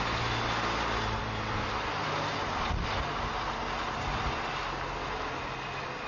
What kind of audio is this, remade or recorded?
recorded